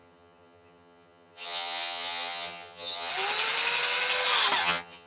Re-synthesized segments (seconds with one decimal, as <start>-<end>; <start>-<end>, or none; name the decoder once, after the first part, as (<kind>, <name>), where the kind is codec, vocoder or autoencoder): 0.0-3.1 (vocoder, HiFi-GAN); 4.6-5.1

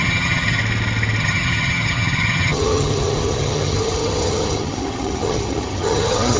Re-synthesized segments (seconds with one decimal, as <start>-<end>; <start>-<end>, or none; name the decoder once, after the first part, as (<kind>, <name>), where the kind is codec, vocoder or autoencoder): 0.0-0.6 (vocoder, HiFi-GAN); 1.2-6.4

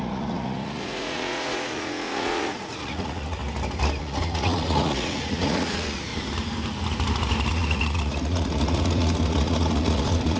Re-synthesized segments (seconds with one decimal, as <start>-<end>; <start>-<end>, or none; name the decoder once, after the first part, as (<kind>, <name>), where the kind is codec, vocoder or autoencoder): 0.0-3.4 (vocoder, Vocos); 4.0-6.1; 7.5-10.4

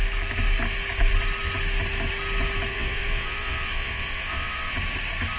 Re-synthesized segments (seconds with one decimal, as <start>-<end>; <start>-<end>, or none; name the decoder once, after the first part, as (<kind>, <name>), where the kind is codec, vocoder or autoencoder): 2.7-4.7 (vocoder, WaveNeXt)